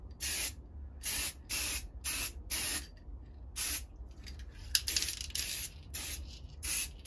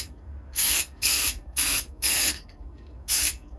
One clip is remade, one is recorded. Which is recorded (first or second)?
first